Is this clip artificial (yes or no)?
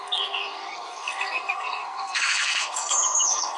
yes